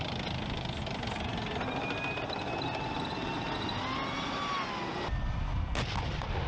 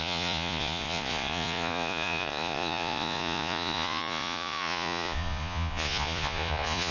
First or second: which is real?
first